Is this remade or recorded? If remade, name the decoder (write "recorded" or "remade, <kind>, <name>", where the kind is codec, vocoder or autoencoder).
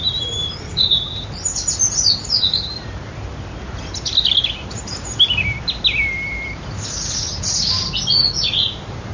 recorded